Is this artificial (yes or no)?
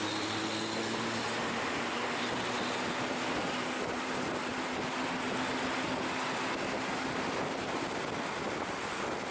no